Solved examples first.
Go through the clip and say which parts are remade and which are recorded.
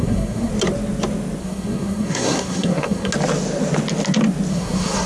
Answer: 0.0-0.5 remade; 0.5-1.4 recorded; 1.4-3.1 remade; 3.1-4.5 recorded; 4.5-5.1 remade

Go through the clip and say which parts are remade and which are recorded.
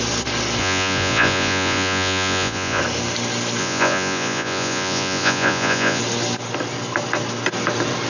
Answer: 0.0-0.6 recorded; 0.6-2.8 remade; 2.8-3.6 recorded; 3.6-6.0 remade; 6.0-8.1 recorded